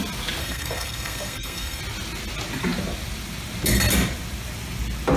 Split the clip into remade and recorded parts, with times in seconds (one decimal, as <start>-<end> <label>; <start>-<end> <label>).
0.0-0.4 recorded; 0.4-1.8 remade; 1.8-5.2 recorded